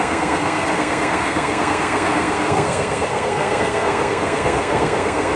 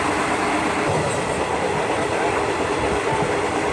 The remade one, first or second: first